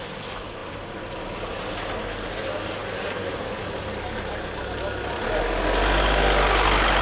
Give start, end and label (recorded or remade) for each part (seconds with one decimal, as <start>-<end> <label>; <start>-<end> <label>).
0.0-7.0 recorded